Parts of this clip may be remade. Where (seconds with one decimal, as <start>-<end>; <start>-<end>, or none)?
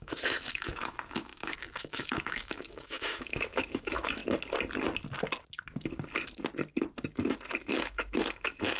0.0-4.2; 7.6-8.8